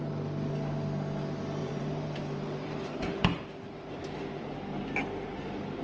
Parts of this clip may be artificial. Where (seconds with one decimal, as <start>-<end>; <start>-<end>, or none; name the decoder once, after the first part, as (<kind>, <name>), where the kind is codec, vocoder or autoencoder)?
1.6-4.0 (vocoder, BigVGAN v2)

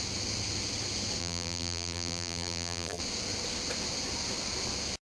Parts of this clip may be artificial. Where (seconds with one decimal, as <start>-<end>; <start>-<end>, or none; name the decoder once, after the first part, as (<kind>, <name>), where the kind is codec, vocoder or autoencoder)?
1.2-3.0 (vocoder, BigVGAN v2)

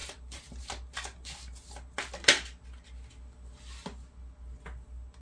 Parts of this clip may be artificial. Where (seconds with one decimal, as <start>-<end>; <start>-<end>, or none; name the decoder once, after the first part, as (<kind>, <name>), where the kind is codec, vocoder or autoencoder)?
0.0-0.6 (vocoder, BigVGAN v2)

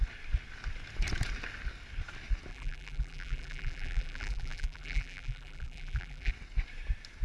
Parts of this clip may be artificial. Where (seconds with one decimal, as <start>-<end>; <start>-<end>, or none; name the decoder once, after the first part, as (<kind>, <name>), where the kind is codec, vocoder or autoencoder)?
2.5-6.3 (vocoder, BigVGAN v2)

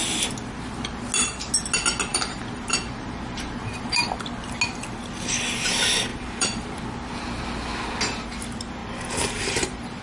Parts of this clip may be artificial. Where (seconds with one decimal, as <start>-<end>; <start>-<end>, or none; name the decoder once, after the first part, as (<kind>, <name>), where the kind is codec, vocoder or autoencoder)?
2.1-4.0 (vocoder, BigVGAN v2); 6.1-6.8; 8.8-10.0

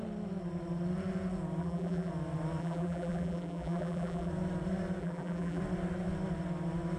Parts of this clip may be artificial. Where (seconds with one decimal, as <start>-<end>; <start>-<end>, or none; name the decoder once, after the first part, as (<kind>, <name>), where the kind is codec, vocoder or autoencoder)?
1.6-2.1 (vocoder, BigVGAN v2); 2.6-4.3; 5.0-5.6

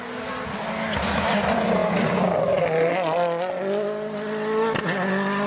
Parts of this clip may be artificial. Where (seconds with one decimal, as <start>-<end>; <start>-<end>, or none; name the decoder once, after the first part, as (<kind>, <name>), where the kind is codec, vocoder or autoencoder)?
none

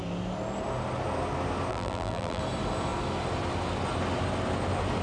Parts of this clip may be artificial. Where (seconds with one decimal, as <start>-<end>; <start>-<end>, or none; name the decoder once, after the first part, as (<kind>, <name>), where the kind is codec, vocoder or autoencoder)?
1.7-2.4 (vocoder, BigVGAN v2)